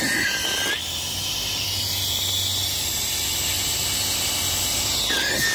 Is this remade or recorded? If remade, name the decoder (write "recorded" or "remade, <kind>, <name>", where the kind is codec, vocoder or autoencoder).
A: recorded